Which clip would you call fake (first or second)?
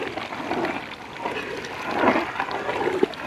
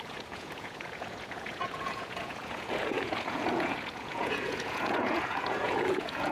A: second